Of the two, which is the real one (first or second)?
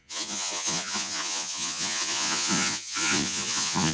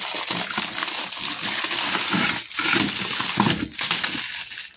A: second